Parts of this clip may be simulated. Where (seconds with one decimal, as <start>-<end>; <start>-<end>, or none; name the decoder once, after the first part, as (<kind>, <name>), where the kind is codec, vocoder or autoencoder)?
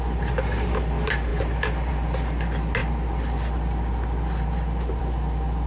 1.3-1.9 (vocoder, BigVGAN v2); 2.8-5.0